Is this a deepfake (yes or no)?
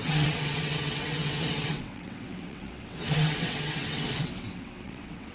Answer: yes